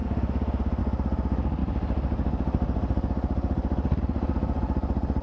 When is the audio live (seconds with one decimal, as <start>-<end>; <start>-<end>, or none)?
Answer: 0.0-5.2